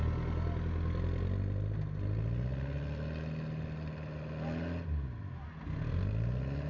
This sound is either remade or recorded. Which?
recorded